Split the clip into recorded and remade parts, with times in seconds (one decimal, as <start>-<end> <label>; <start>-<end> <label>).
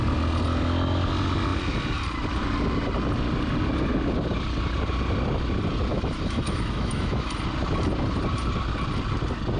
0.0-5.9 recorded; 5.9-7.3 remade; 7.3-9.6 recorded